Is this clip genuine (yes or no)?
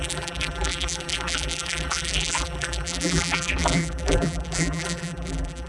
no